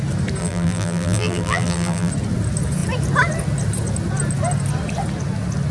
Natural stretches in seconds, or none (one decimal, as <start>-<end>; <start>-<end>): 0.0-0.4; 2.1-5.7